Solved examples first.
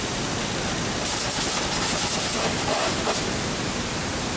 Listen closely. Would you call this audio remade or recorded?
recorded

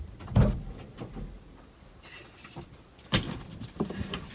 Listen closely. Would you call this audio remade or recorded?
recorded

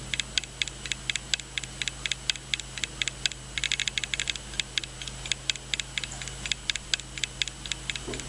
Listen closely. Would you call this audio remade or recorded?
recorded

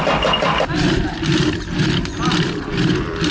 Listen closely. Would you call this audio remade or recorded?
recorded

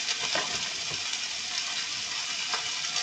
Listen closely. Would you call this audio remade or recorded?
recorded